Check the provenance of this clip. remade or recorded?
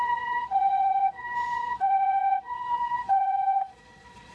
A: remade